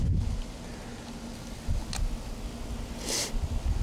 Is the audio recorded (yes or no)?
yes